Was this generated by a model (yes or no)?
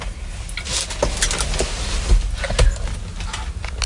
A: no